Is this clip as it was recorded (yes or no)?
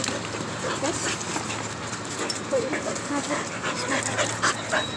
yes